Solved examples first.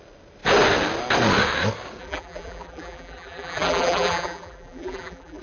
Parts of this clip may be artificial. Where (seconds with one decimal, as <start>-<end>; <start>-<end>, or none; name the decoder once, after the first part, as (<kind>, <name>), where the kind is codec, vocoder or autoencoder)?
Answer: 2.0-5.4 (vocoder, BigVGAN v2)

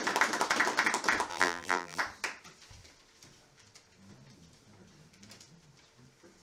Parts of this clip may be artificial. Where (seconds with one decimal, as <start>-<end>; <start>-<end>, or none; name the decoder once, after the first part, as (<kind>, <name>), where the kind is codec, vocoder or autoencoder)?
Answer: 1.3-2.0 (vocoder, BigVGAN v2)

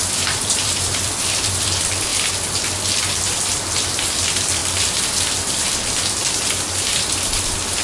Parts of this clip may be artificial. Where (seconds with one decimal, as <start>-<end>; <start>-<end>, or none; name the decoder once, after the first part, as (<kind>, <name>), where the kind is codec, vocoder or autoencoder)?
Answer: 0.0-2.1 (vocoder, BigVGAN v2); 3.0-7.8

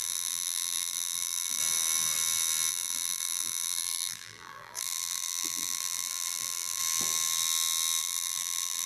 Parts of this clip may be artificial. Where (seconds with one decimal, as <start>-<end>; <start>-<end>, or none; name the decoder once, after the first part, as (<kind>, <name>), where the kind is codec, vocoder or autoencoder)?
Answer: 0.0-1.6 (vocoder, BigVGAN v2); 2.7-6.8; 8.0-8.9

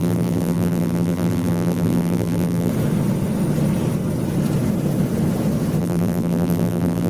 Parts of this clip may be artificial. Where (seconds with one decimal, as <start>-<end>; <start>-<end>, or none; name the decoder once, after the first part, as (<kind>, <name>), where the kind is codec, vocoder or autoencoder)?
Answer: 0.0-2.7 (vocoder, BigVGAN v2); 5.8-7.1